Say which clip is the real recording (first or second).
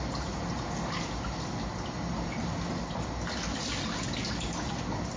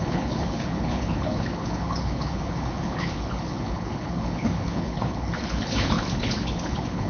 first